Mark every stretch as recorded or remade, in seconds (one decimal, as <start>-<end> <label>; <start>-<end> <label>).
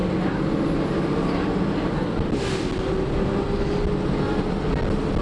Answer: 0.0-5.2 recorded